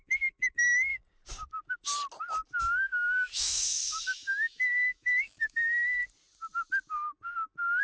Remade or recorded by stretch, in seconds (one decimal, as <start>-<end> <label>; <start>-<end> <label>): 0.0-0.9 remade; 0.9-2.6 recorded; 2.6-6.0 remade; 6.0-7.8 recorded